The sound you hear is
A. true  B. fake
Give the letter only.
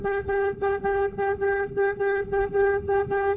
B